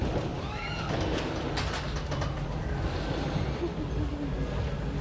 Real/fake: real